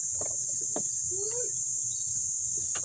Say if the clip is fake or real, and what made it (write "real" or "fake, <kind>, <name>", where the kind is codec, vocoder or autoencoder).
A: real